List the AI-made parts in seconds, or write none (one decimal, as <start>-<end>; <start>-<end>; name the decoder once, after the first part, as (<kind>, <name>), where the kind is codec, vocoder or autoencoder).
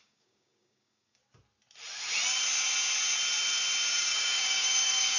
0.0-1.2 (codec, DAC); 3.9-5.2